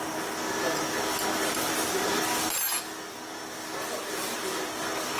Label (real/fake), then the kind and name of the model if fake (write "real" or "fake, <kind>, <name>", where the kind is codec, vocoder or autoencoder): real